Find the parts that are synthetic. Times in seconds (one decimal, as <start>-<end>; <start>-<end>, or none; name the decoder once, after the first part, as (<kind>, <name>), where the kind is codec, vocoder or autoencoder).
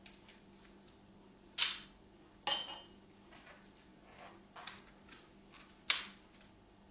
none